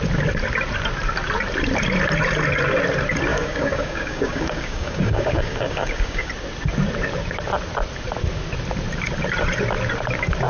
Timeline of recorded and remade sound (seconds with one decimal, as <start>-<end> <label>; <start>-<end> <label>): 0.0-3.3 recorded; 3.3-6.3 remade; 6.3-10.5 recorded